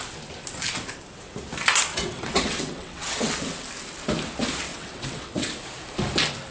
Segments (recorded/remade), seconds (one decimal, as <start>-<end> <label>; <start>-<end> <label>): 0.0-1.9 recorded; 1.9-3.3 remade; 3.3-4.7 recorded; 4.7-5.5 remade; 5.5-6.5 recorded

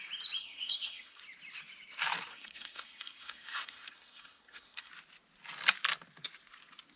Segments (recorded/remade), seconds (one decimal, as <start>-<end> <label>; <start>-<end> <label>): 0.0-0.4 recorded; 0.4-1.2 remade; 1.2-2.3 recorded; 2.3-4.9 remade; 4.9-7.0 recorded

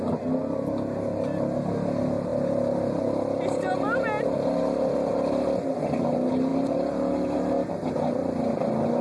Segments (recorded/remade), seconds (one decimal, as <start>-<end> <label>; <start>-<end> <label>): 0.0-9.0 recorded

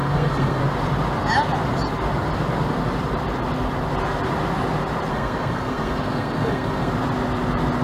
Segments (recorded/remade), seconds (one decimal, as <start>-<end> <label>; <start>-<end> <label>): 0.0-0.6 remade; 0.6-5.1 recorded; 5.1-6.9 remade; 6.9-7.8 recorded

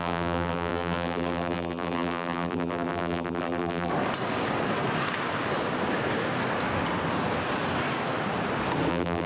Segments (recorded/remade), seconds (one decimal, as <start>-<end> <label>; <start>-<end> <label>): 0.0-3.9 remade; 3.9-8.9 recorded; 8.9-9.3 remade

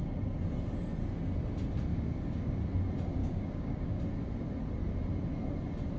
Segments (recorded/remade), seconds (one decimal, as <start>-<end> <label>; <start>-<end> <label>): 0.0-1.9 recorded; 1.9-2.6 remade; 2.6-3.2 recorded; 3.2-4.0 remade; 4.0-6.0 recorded

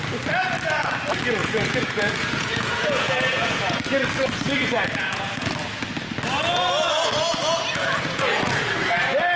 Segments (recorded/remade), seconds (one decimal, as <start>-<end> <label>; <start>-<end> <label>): 0.0-1.4 recorded; 1.4-3.8 remade; 3.8-4.6 recorded; 4.6-5.5 remade; 5.5-7.4 recorded; 7.4-8.7 remade; 8.7-9.4 recorded